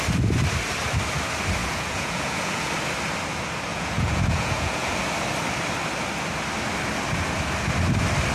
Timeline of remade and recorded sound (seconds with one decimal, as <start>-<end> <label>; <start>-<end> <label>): 0.0-1.6 recorded; 1.6-2.7 remade; 2.7-3.7 recorded; 3.7-5.0 remade; 5.0-8.3 recorded